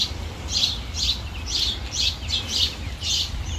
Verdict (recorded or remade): recorded